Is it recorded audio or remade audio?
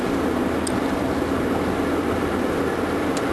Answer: recorded